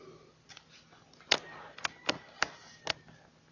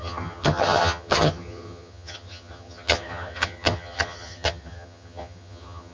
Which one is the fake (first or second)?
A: second